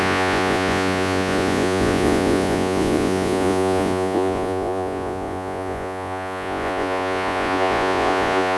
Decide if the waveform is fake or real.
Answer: fake